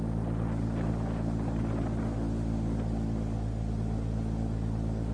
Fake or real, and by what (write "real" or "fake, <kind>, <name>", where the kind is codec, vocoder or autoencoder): real